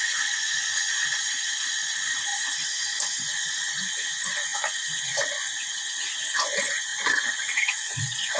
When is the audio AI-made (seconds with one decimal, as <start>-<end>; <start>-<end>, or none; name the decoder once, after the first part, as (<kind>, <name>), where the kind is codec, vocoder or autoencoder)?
0.0-1.2 (vocoder, Vocos); 1.9-8.4